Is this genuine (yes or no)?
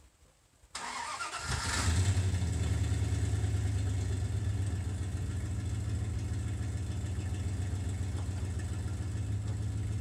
yes